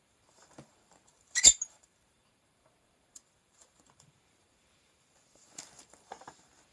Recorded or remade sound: remade